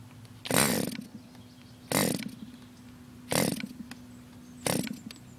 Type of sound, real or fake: real